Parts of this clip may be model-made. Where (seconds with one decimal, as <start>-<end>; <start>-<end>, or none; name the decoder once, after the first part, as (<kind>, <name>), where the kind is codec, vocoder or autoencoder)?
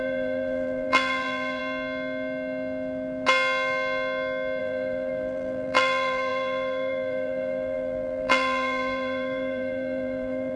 0.0-1.6 (vocoder, BigVGAN v2); 4.6-10.6